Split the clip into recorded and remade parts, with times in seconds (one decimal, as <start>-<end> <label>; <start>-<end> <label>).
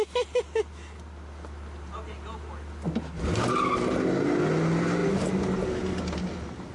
0.0-6.7 recorded